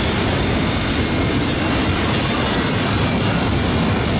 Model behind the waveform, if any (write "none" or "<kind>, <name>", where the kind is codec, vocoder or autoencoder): none